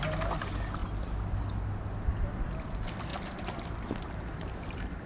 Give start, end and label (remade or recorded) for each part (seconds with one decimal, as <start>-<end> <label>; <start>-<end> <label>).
0.0-3.1 recorded; 3.1-5.1 remade